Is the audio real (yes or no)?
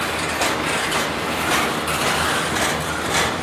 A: no